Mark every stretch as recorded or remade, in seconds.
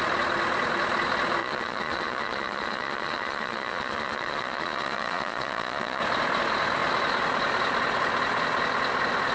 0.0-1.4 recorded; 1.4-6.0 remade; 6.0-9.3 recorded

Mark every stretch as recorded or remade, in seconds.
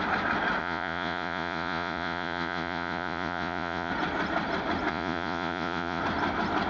0.0-0.6 recorded; 0.6-3.9 remade; 3.9-4.9 recorded; 4.9-6.0 remade; 6.0-6.7 recorded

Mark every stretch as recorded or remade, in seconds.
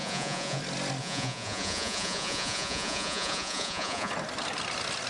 0.0-0.6 remade; 0.6-1.0 recorded; 1.0-4.1 remade; 4.1-5.1 recorded